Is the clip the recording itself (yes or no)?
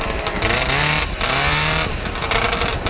yes